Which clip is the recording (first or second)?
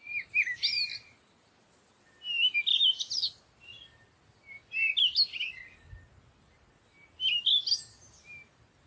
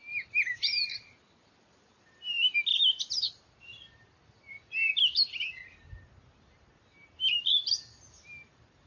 first